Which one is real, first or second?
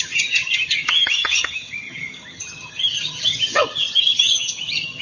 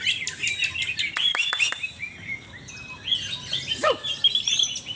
second